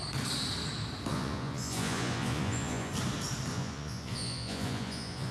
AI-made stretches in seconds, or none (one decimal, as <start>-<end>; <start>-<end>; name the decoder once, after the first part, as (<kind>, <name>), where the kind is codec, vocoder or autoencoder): 1.1-2.9 (vocoder, Vocos); 3.5-5.3